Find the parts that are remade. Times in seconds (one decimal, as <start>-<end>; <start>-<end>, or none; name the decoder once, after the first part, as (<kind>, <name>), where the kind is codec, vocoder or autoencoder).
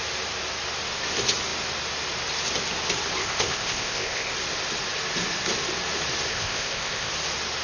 3.2-4.3 (codec, ZipCodec); 6.3-7.1